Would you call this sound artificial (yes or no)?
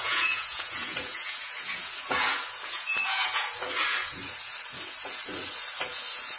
yes